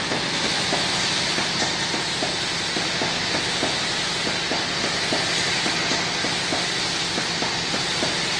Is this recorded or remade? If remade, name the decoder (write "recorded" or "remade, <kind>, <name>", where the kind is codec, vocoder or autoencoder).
recorded